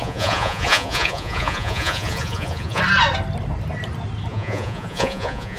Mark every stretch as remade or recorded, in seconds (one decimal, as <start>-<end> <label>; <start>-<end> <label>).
0.0-2.8 remade; 2.8-4.3 recorded; 4.3-5.6 remade